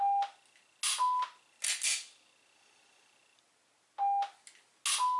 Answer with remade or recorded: recorded